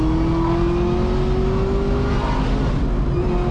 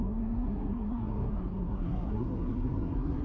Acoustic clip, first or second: first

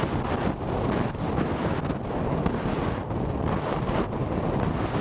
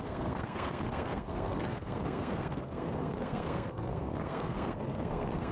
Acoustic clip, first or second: first